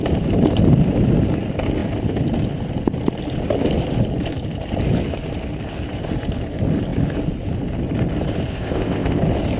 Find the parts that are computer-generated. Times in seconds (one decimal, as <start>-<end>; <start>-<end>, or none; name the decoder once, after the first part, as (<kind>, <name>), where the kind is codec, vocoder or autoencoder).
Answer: 8.5-9.2 (codec, ZipCodec)